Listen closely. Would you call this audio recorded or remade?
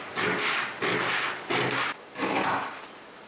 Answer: recorded